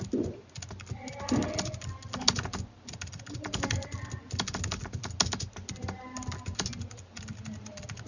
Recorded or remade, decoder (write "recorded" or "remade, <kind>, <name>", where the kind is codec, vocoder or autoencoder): recorded